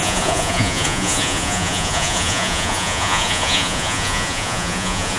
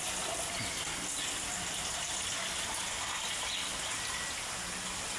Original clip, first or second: second